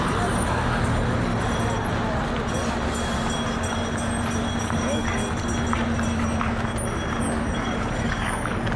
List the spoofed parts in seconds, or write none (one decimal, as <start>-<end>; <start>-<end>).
0.0-1.3; 4.6-5.2; 7.2-8.8